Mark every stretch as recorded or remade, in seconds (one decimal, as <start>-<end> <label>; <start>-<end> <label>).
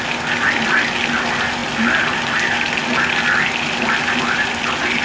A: 0.0-5.0 recorded